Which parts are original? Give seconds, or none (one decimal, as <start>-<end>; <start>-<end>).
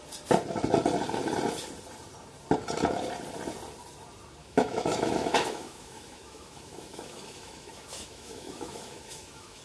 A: 0.0-4.4